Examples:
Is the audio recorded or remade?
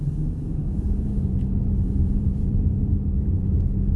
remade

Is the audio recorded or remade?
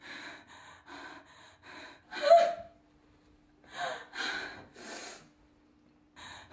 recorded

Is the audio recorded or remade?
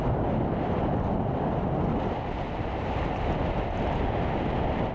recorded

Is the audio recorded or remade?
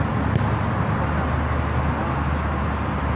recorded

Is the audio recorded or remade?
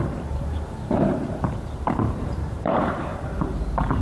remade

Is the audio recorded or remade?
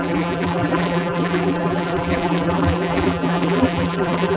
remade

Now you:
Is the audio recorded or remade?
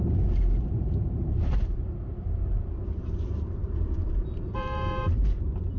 remade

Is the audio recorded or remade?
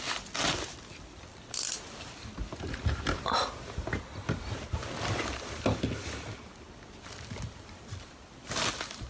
recorded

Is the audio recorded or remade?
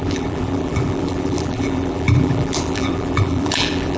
remade